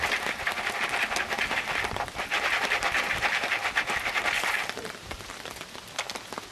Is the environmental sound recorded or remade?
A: recorded